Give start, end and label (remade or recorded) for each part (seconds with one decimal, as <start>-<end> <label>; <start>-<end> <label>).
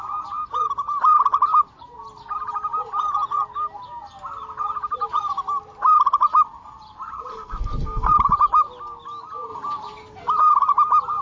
0.0-7.3 recorded; 7.3-8.1 remade; 8.1-11.2 recorded